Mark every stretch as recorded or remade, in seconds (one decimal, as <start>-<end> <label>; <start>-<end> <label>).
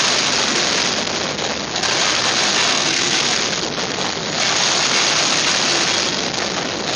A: 0.0-2.7 recorded; 2.7-3.2 remade; 3.2-7.0 recorded